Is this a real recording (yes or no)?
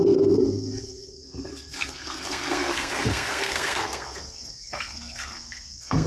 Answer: no